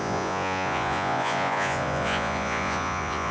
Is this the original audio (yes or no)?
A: no